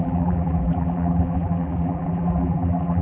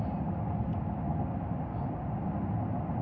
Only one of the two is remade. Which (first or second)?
first